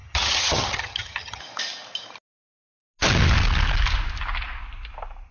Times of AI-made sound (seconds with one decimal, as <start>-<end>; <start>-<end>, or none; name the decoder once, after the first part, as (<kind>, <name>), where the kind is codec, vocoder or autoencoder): 0.0-1.4 (vocoder, HiFi-GAN)